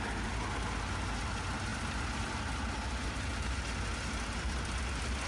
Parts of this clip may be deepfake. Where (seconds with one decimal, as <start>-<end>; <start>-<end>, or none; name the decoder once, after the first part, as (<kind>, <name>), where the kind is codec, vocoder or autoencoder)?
none